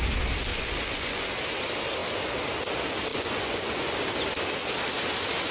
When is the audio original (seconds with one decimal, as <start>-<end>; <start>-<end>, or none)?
0.0-0.5; 1.2-3.1; 4.0-5.5